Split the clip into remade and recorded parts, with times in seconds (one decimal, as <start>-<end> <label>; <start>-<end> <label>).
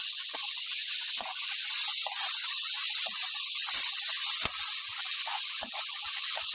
0.0-6.5 recorded